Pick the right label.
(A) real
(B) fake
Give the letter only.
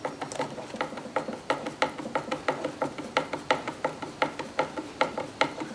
A